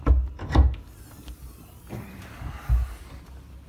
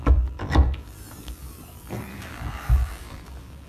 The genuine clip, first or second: first